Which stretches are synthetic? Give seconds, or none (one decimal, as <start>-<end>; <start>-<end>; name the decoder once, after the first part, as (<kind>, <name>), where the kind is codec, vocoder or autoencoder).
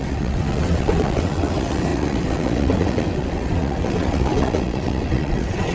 0.0-5.7 (vocoder, WaveNeXt)